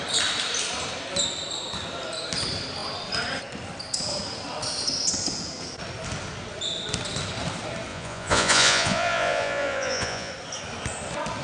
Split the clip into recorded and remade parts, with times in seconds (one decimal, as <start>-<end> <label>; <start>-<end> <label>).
0.0-7.9 recorded; 7.9-10.3 remade; 10.3-11.4 recorded